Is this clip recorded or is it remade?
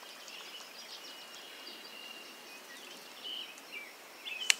recorded